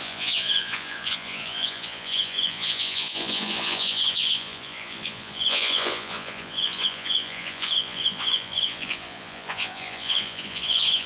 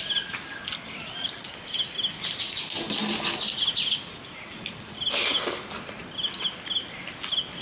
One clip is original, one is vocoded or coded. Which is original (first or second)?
second